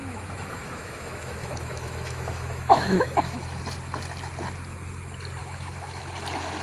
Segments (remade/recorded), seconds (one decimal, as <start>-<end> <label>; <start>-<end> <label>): 0.0-3.6 remade; 3.6-5.4 recorded; 5.4-6.0 remade; 6.0-6.6 recorded